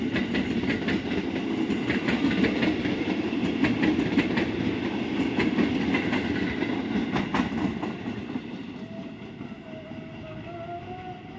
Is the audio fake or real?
real